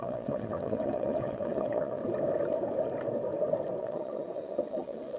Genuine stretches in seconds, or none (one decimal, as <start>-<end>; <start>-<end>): 2.0-3.8